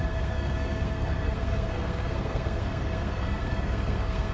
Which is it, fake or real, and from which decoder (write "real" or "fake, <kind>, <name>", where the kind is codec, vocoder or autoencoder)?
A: fake, codec, SNAC